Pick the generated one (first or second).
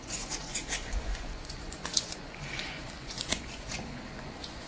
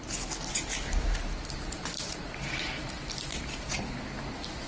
first